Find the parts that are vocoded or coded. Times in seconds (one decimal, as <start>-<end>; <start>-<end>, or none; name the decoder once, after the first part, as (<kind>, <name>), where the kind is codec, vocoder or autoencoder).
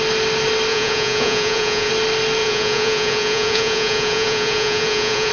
0.7-1.9 (vocoder, Vocos); 2.4-5.3